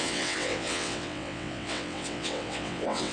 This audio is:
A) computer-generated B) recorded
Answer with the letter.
A